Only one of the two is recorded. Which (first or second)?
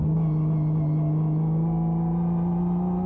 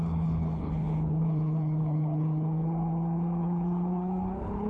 first